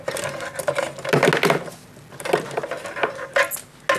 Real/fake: real